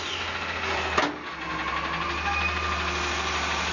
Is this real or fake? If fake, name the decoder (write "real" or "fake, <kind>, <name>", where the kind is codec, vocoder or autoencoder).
real